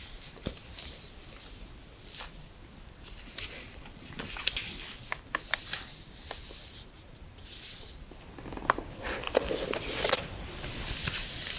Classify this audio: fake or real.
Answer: real